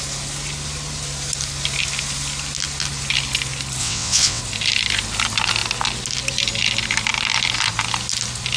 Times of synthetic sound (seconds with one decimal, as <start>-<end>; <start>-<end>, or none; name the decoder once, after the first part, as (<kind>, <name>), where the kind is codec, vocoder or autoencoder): 3.8-4.4 (vocoder, WaveNeXt)